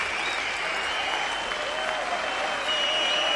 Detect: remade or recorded recorded